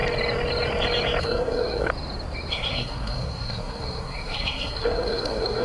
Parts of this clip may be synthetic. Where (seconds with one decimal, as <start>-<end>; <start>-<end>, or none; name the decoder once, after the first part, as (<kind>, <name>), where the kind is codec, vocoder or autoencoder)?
1.2-1.9 (codec, SNAC); 2.5-5.6